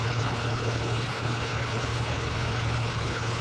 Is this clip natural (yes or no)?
no